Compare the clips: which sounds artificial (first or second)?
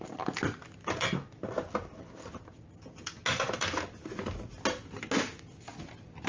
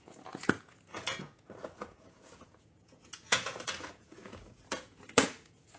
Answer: second